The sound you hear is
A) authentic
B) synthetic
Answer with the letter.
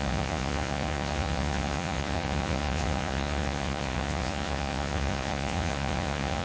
B